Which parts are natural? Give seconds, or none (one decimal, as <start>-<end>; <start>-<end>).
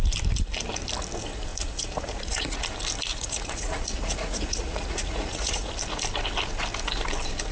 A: 0.0-1.5; 2.6-3.1; 5.7-7.5